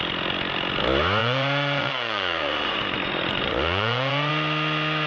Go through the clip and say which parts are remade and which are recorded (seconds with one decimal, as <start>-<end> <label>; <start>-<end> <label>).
0.0-1.2 recorded; 1.2-4.3 remade; 4.3-5.1 recorded

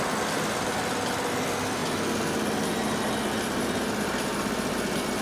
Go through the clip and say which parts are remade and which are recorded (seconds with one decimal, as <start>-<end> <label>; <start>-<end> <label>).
0.0-5.2 recorded

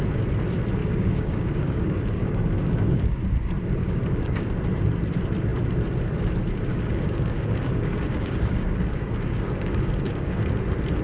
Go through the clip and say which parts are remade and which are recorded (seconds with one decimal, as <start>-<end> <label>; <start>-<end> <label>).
0.0-0.8 recorded; 0.8-3.2 remade; 3.2-3.8 recorded; 3.8-4.6 remade; 4.6-6.7 recorded; 6.7-10.5 remade; 10.5-11.0 recorded

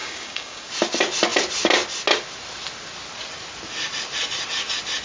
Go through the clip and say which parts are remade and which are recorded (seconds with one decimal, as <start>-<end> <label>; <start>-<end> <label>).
0.0-0.7 remade; 0.7-5.0 recorded